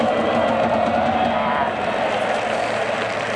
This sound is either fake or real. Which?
real